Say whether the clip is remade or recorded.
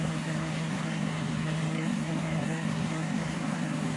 remade